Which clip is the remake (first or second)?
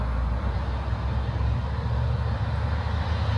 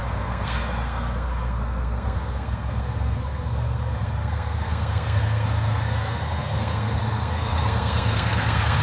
second